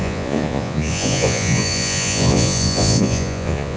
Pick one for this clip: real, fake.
fake